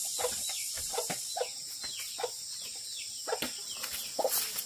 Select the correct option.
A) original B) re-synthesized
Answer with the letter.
A